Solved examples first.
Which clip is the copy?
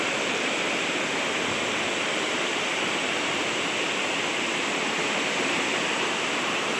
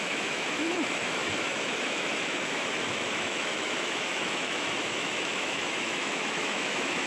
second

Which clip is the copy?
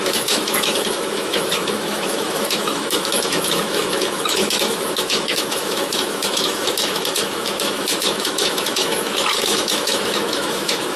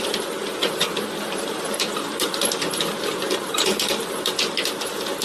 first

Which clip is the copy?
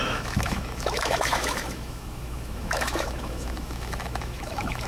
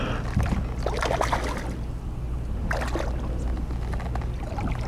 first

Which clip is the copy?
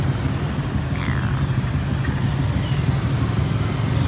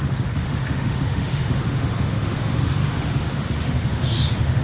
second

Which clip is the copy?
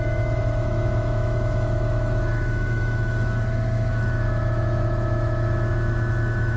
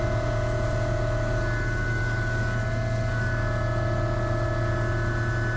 first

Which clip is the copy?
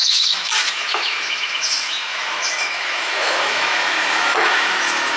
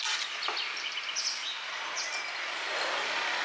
first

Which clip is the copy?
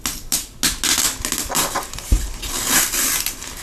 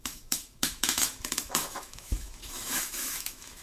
second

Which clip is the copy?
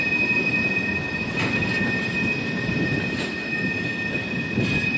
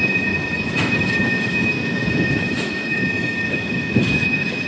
second